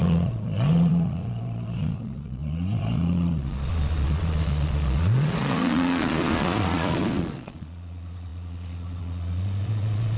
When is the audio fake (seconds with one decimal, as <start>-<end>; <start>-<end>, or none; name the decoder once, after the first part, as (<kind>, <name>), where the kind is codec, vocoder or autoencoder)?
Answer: 0.0-10.2 (vocoder, Vocos)